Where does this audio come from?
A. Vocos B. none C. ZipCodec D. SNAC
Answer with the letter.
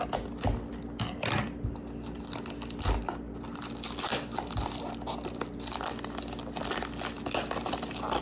B